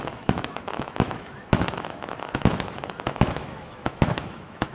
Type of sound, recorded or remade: remade